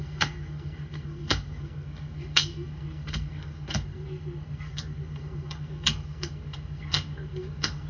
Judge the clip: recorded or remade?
remade